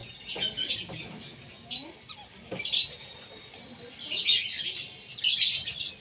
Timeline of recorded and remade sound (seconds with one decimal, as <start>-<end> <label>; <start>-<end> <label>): 0.0-6.0 recorded